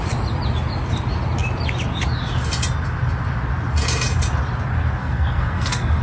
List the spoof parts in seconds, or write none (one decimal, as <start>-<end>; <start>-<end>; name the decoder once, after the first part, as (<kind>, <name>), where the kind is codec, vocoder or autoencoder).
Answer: 5.0-6.0 (codec, SNAC)